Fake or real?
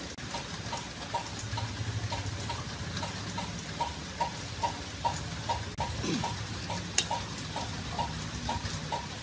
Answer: real